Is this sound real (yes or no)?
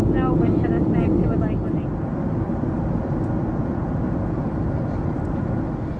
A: yes